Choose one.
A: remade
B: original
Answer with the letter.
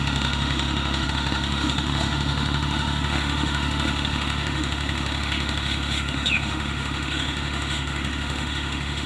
A